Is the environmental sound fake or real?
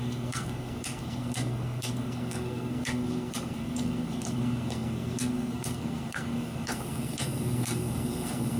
fake